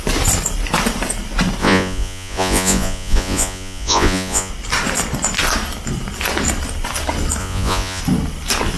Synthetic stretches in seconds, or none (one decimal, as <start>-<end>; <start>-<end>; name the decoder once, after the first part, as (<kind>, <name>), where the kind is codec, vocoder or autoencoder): 1.6-4.5 (vocoder, Vocos); 7.4-8.0

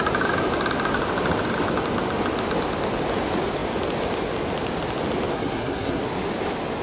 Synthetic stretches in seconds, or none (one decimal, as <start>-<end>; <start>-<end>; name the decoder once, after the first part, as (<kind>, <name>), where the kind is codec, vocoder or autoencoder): 5.3-6.0 (codec, SNAC)

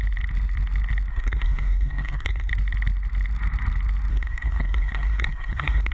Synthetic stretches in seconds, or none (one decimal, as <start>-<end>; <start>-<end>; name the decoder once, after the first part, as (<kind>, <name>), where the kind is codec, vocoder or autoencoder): 1.1-2.5 (codec, SNAC); 4.1-5.9

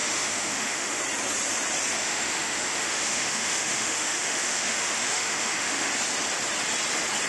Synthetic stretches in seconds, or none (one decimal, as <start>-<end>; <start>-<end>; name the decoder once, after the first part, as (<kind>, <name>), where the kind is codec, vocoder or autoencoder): 0.0-1.0 (autoencoder, DAC-VAE); 2.0-5.9

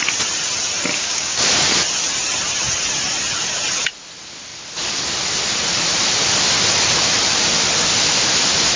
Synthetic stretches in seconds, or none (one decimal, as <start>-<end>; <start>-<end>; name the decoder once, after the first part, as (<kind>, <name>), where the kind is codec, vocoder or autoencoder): 0.9-1.4 (codec, DAC)

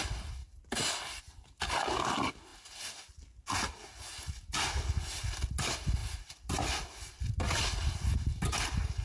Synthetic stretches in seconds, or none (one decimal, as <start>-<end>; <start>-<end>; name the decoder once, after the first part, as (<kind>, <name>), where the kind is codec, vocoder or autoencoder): 0.4-1.2 (vocoder, BigVGAN v2); 6.0-7.2

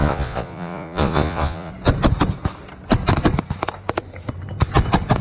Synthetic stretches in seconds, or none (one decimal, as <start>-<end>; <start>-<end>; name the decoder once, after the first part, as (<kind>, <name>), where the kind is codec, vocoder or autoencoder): 0.0-1.7 (vocoder, Vocos)

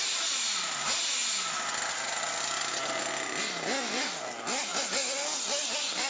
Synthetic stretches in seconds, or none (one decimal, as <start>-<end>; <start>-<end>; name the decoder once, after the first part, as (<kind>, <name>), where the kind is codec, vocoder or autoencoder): none